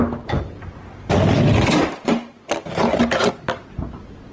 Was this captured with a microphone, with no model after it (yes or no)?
yes